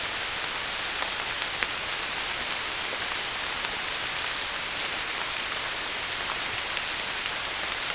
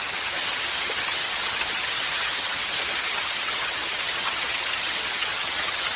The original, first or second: first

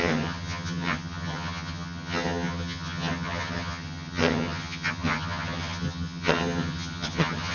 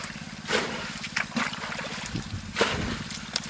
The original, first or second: second